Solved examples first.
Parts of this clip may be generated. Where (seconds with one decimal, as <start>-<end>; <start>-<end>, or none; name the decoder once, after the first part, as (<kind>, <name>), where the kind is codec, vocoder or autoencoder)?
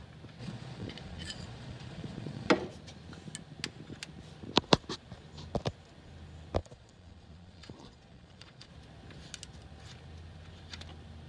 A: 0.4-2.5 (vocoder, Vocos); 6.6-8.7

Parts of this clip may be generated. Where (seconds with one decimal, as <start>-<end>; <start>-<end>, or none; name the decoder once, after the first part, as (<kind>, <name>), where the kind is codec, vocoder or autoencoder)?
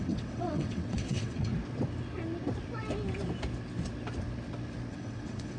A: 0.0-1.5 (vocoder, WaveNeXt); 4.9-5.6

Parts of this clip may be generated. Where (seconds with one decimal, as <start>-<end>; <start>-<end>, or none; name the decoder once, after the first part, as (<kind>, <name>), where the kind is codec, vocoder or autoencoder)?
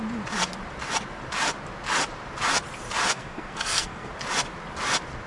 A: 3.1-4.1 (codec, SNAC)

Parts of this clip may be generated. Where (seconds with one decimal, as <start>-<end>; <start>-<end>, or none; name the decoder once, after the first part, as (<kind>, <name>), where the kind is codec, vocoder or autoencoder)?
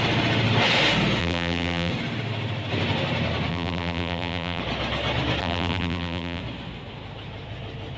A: 1.2-1.9 (vocoder, BigVGAN v2); 3.5-4.6; 5.4-6.4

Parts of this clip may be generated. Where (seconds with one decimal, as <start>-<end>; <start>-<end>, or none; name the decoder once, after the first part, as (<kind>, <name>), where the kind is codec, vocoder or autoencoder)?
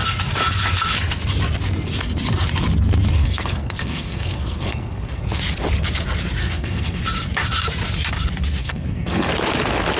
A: 3.2-5.4 (codec, SNAC); 6.4-7.0; 8.6-9.3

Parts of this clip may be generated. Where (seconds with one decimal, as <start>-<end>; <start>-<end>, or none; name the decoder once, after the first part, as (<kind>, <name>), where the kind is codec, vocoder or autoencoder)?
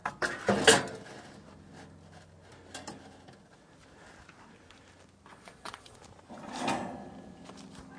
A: 5.3-6.0 (vocoder, Vocos)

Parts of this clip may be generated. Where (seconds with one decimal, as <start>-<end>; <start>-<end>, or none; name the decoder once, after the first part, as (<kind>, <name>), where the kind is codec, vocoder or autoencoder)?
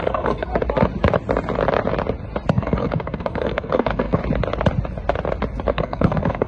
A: 0.0-0.5 (codec, SNAC); 2.5-4.2; 5.7-6.5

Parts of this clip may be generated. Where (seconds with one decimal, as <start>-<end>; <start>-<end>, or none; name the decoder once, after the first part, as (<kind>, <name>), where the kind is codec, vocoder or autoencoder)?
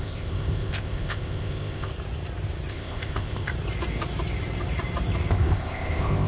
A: 0.0-1.9 (codec, ZipCodec); 2.7-3.5; 5.3-6.3